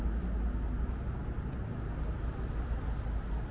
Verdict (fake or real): real